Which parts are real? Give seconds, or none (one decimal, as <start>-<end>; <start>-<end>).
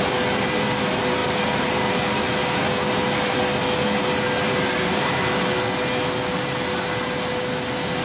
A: 0.0-8.0